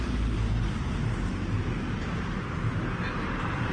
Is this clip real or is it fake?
fake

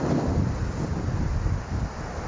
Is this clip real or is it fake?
real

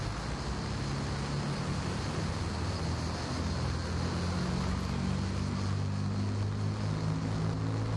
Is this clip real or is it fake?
real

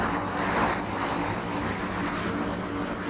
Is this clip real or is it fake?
real